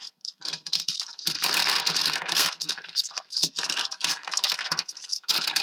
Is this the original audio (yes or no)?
no